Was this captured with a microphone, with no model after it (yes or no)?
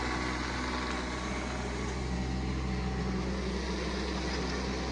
yes